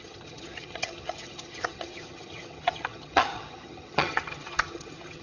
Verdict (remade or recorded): remade